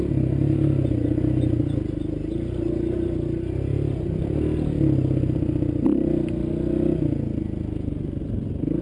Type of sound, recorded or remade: recorded